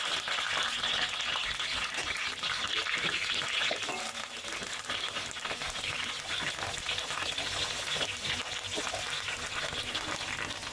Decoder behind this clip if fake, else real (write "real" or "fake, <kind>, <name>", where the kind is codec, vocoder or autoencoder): real